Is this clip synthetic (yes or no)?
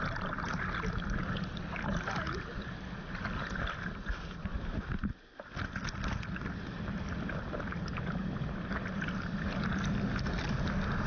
no